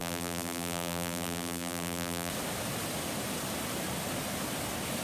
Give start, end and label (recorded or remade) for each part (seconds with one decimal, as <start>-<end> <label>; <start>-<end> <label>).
0.0-2.3 remade; 2.3-5.0 recorded